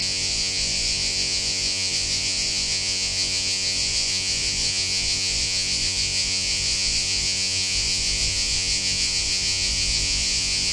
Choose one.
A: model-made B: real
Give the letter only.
A